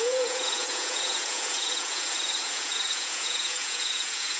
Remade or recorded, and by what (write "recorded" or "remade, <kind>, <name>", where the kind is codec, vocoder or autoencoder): remade, vocoder, Vocos